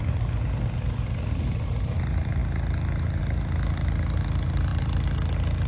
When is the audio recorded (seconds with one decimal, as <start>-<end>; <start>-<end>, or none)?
0.0-5.7